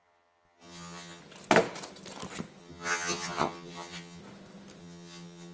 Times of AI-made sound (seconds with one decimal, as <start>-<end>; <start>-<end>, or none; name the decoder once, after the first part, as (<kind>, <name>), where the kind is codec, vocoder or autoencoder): 0.0-1.2 (vocoder, HiFi-GAN); 2.6-4.2; 4.8-5.5